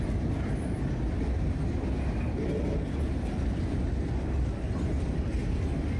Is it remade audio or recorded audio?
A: recorded